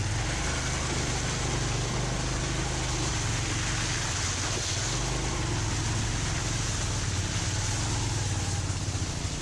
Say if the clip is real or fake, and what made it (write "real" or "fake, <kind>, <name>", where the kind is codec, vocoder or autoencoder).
real